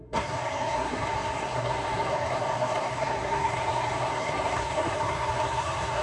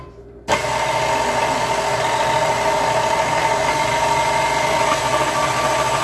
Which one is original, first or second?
second